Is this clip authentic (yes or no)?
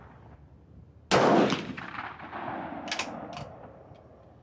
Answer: yes